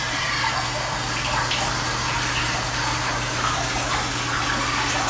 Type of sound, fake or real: real